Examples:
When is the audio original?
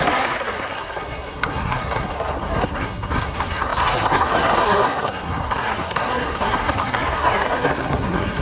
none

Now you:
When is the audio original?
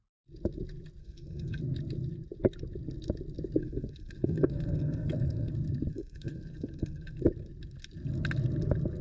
0.0-1.0; 1.6-3.6; 5.5-5.9; 7.2-9.0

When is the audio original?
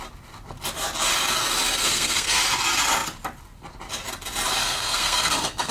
0.0-1.8; 2.4-4.6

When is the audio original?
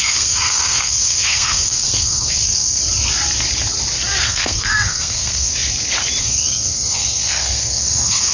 2.8-4.2; 5.5-6.2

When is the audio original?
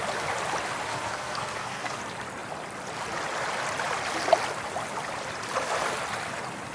0.0-0.9; 2.0-6.7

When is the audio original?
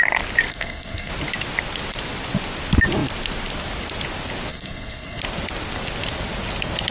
0.0-0.5; 1.1-4.5; 5.2-6.9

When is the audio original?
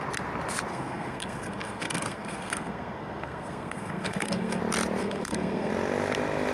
0.0-0.7; 4.6-5.0; 5.7-6.5